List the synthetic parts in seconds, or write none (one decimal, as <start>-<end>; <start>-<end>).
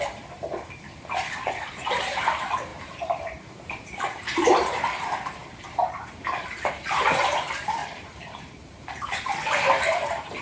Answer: 0.0-7.8; 9.0-10.4